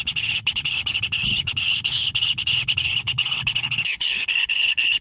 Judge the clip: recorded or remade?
remade